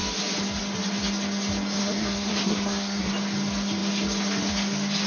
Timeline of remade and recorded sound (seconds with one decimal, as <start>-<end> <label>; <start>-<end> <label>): 0.0-1.8 recorded; 1.8-3.1 remade; 3.1-5.1 recorded